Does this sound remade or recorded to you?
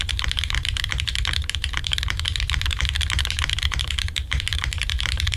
remade